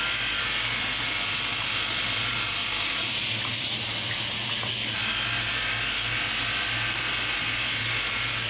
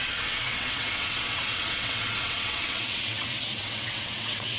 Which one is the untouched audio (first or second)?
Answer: first